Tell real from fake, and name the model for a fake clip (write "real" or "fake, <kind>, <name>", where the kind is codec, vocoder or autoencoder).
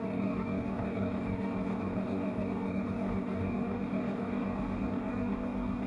fake, codec, DAC